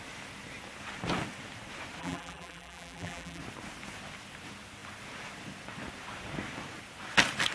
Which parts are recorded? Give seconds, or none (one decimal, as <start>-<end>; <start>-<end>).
0.0-2.0; 3.4-7.5